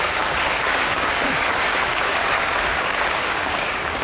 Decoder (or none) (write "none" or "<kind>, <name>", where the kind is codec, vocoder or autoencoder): codec, DAC